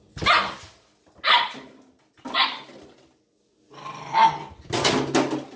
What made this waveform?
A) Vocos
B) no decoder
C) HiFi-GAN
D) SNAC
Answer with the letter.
B